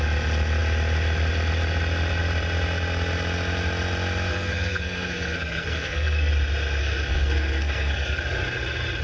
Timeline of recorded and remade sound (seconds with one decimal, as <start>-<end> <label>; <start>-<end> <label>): 0.0-4.3 recorded; 4.3-6.3 remade; 6.3-6.8 recorded; 6.8-8.2 remade; 8.2-9.0 recorded